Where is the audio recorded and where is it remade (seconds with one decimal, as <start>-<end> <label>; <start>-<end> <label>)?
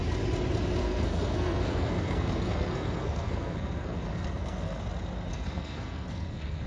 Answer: 0.0-0.8 recorded; 0.8-4.8 remade; 4.8-5.3 recorded; 5.3-6.7 remade